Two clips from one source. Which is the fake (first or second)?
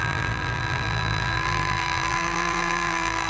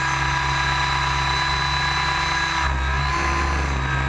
first